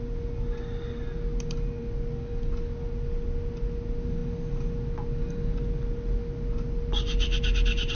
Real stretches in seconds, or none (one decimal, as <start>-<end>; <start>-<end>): 0.0-7.9